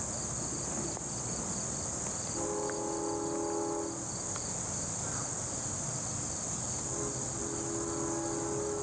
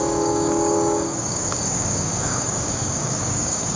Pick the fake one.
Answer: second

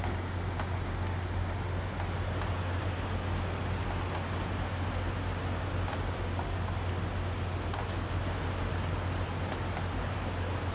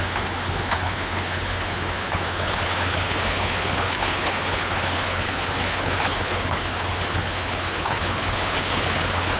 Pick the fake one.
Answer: second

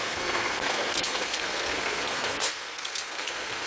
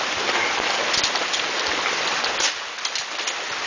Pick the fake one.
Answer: first